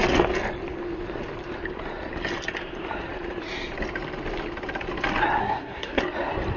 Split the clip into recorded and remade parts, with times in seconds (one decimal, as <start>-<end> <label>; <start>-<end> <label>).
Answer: 0.0-5.4 recorded; 5.4-6.0 remade; 6.0-6.6 recorded